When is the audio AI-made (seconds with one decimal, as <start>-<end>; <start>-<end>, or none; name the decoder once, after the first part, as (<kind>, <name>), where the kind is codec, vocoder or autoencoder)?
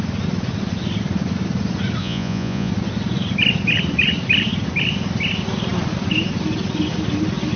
2.0-2.7 (vocoder, Vocos)